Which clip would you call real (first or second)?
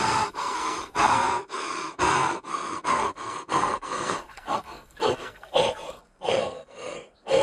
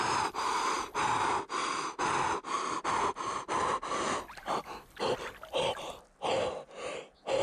second